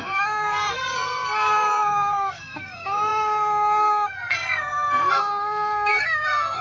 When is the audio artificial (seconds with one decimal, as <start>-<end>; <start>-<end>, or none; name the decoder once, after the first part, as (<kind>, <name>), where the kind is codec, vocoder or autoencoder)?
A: 0.0-6.6 (codec, SNAC)